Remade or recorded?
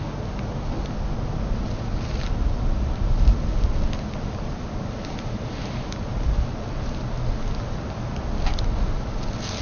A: recorded